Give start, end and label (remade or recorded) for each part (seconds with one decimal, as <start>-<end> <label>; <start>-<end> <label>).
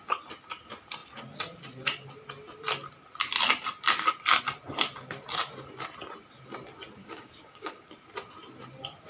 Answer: 0.0-7.0 recorded; 7.0-7.9 remade; 7.9-9.1 recorded